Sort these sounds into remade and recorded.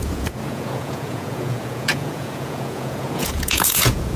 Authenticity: remade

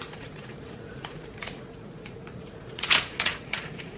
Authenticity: remade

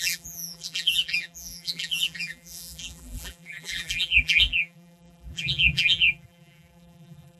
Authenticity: remade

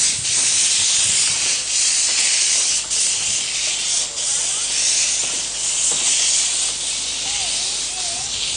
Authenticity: recorded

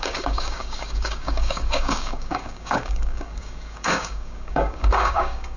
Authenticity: remade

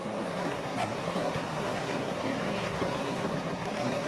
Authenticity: remade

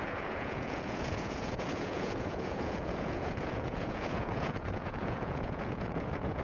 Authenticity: remade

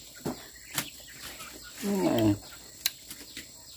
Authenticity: recorded